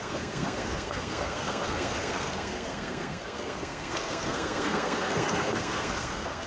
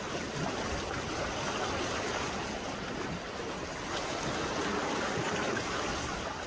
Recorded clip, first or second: second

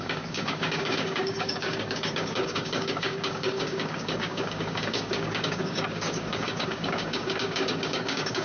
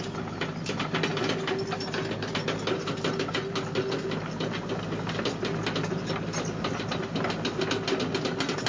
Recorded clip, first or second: second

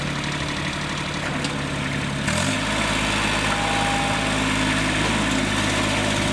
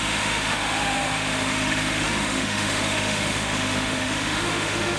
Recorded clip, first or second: first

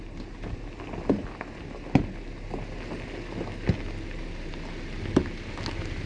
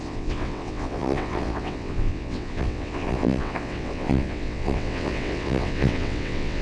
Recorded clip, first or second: first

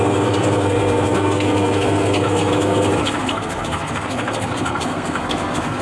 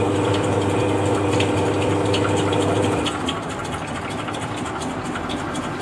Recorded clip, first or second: second